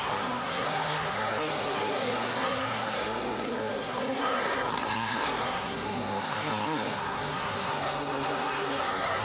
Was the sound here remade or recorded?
remade